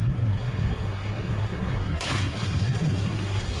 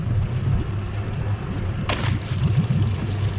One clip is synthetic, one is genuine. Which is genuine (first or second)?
second